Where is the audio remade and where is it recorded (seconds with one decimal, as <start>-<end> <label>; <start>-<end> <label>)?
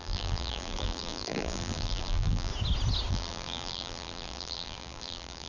0.0-2.5 remade; 2.5-3.1 recorded; 3.1-5.5 remade